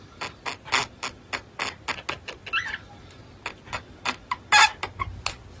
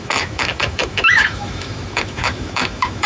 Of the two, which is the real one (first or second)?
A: first